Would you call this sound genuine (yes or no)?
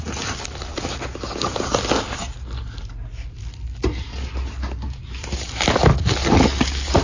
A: yes